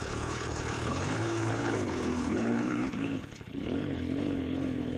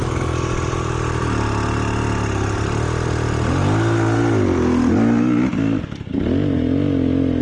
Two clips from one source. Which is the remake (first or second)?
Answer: first